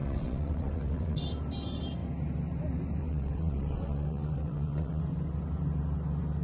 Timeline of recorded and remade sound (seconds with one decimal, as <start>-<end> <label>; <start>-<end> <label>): 0.0-1.2 remade; 1.2-3.0 recorded; 3.0-5.0 remade; 5.0-6.4 recorded